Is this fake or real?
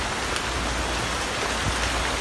real